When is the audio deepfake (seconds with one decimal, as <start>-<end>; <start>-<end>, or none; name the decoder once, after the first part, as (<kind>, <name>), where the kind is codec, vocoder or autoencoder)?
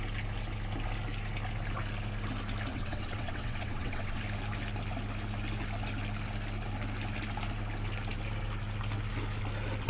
2.7-4.2 (vocoder, WaveNeXt)